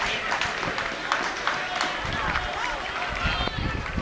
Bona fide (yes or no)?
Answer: yes